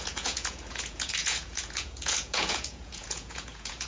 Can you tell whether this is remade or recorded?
remade